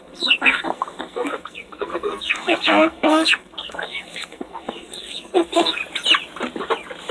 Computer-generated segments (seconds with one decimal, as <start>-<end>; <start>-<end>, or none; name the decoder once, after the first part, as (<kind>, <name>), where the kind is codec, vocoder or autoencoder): 0.0-5.8 (codec, SNAC)